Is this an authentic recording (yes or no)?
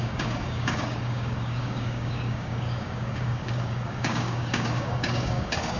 no